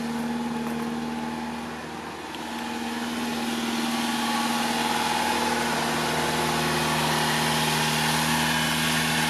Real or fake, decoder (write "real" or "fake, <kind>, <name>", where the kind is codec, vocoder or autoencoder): real